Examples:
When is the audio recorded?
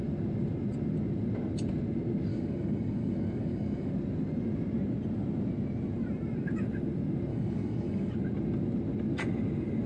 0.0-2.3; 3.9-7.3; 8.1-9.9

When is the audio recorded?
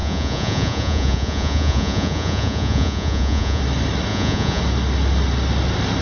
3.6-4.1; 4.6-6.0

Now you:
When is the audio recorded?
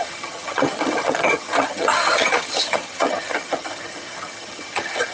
none